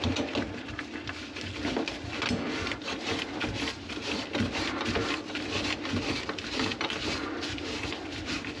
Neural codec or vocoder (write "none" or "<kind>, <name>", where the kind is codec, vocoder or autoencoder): none